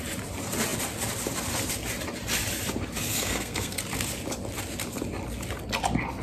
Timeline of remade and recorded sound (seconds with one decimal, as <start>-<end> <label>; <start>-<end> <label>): 0.0-3.1 recorded; 3.1-3.8 remade; 3.8-6.2 recorded